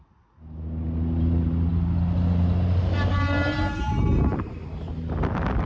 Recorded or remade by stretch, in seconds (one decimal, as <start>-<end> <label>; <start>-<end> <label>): 0.0-5.7 recorded